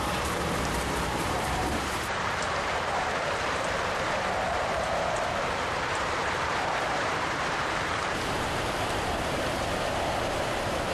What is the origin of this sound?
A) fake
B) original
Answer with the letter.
A